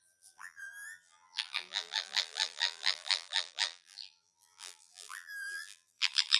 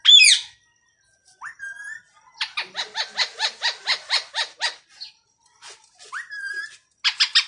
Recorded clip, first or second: second